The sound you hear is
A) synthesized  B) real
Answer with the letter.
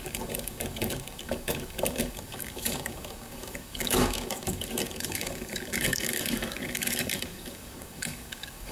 A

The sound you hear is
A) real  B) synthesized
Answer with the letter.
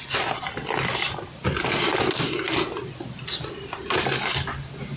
A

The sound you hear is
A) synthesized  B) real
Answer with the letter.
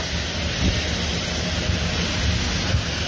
B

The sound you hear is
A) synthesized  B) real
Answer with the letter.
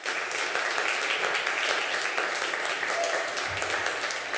B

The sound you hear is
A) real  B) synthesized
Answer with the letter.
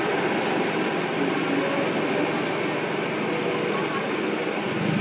A